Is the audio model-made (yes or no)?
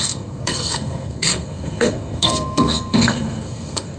yes